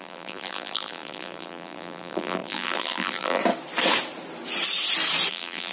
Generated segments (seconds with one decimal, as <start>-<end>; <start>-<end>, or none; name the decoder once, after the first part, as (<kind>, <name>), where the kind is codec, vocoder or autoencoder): 0.0-3.4 (vocoder, BigVGAN v2); 5.3-5.7